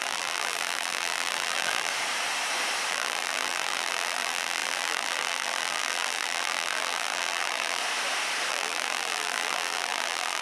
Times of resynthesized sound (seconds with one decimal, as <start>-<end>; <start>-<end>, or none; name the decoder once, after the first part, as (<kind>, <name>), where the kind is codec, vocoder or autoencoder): 0.0-1.9 (vocoder, BigVGAN v2); 2.9-7.8; 8.5-10.4